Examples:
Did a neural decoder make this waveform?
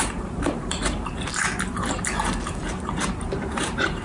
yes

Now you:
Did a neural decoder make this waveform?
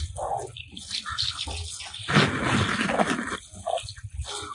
no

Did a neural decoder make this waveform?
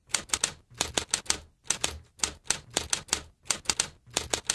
no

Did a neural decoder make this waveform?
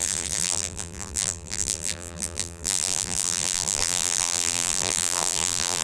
yes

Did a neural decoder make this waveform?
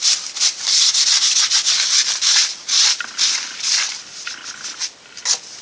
no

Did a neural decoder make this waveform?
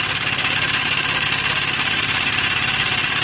yes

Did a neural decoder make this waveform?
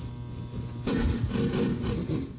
no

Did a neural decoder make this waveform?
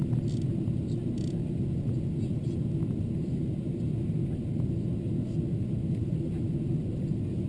no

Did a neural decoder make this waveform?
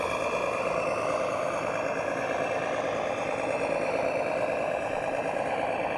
no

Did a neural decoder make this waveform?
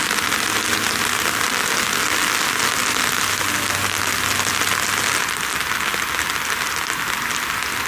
no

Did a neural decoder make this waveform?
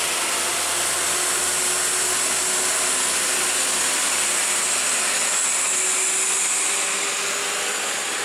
no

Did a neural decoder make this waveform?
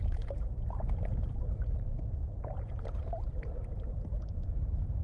yes